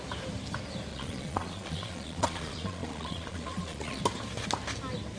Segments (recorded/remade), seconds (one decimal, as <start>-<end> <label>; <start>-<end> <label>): 0.0-0.9 recorded; 0.9-4.0 remade; 4.0-5.2 recorded